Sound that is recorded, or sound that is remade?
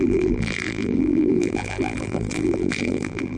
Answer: remade